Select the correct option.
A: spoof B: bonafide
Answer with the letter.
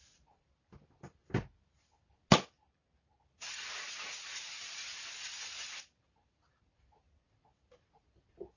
B